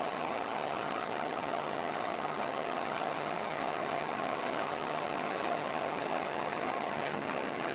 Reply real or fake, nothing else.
fake